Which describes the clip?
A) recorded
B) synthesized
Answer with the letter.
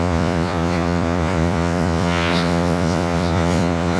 B